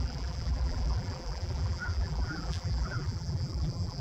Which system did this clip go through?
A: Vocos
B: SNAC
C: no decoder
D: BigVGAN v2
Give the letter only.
D